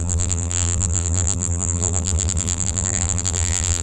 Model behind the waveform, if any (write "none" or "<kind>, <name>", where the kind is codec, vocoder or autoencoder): vocoder, BigVGAN v2